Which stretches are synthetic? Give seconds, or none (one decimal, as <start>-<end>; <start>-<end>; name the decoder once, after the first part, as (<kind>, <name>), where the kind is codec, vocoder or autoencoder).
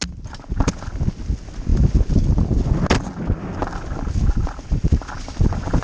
none